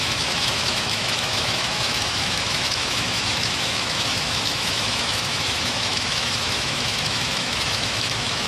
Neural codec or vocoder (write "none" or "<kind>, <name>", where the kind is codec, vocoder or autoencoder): autoencoder, DAC-VAE